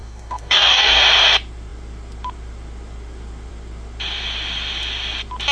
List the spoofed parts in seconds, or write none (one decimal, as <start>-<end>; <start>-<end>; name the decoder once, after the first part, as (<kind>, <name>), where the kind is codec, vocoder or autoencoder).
0.0-1.0 (codec, DAC)